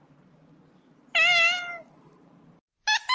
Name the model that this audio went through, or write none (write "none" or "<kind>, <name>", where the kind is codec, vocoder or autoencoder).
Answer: none